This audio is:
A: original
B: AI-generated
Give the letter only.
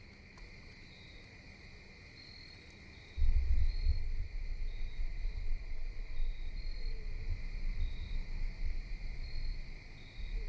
A